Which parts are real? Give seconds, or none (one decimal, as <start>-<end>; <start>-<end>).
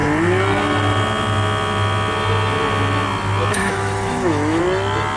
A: 0.0-3.6; 4.6-5.2